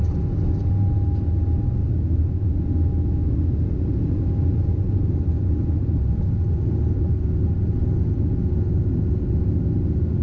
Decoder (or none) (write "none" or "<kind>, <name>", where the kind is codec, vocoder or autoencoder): none